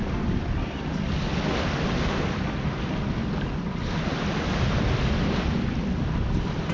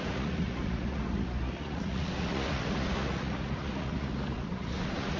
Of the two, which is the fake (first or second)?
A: second